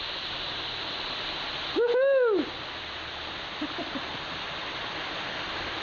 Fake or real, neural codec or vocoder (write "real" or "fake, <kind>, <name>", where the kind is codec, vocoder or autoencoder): real